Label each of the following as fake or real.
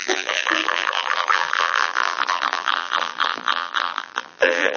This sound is fake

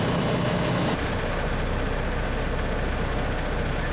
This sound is real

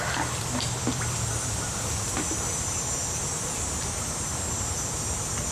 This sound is fake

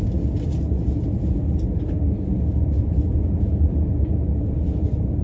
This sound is real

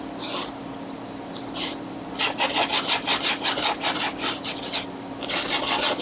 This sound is fake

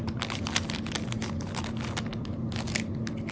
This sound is real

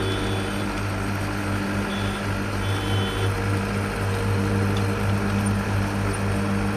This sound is real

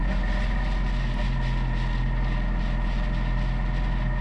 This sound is real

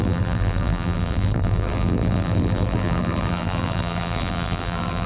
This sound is fake